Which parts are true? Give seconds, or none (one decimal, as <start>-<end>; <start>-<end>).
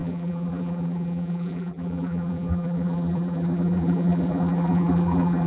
none